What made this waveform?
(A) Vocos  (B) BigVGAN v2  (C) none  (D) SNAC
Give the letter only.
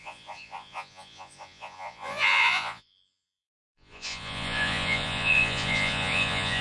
A